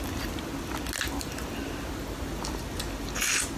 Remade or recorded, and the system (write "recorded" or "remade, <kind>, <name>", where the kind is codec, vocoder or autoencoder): recorded